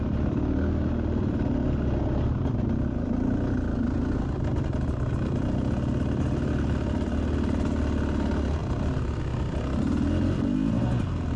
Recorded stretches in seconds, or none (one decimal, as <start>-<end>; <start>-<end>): 0.0-11.4